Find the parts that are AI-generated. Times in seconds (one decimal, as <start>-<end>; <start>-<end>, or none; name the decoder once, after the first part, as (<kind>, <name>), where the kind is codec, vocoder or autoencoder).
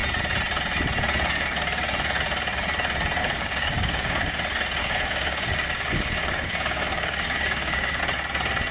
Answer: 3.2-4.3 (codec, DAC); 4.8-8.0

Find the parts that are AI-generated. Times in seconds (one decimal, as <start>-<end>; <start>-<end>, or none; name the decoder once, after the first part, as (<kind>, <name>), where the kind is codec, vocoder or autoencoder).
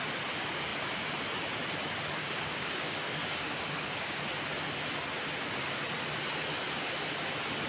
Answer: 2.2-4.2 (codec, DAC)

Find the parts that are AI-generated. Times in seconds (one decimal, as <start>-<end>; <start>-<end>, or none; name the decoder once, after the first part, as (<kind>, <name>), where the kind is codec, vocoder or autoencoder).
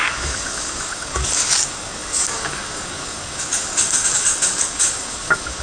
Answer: 0.0-5.6 (codec, DAC)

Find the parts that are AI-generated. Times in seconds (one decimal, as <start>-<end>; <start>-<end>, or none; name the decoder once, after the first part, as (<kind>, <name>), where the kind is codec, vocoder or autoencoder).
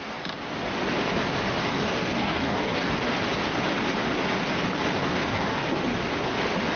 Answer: 1.6-2.9 (codec, DAC); 4.9-5.8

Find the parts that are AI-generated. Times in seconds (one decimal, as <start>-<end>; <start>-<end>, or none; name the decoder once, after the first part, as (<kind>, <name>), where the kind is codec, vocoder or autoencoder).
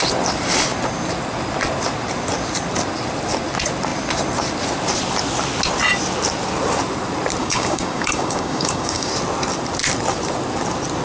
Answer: 7.4-9.1 (codec, DAC)